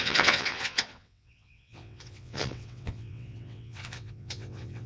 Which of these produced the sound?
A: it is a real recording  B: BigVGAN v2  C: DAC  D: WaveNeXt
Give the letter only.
D